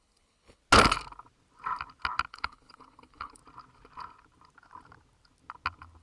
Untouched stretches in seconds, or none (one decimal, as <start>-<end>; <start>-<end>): 0.6-2.3; 3.4-6.0